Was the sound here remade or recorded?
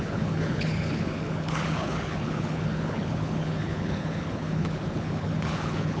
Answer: remade